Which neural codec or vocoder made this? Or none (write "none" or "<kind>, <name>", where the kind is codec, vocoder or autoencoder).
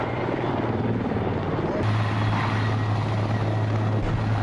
none